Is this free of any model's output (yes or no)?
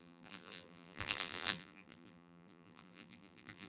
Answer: no